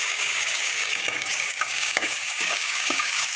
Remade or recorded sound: remade